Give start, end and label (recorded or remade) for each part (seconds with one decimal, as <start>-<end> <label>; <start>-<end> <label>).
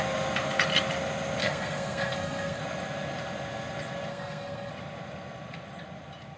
0.0-1.4 recorded; 1.4-2.6 remade; 2.6-4.1 recorded; 4.1-4.7 remade; 4.7-6.4 recorded